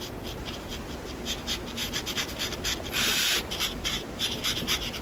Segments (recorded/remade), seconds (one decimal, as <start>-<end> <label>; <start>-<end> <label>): 0.0-0.7 recorded; 0.7-1.4 remade; 1.4-1.8 recorded; 1.8-3.4 remade; 3.4-5.0 recorded